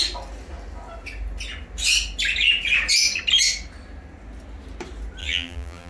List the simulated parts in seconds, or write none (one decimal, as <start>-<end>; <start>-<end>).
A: 5.2-5.9